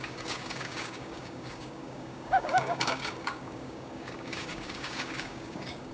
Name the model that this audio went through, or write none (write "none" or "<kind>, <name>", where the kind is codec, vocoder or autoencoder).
codec, DAC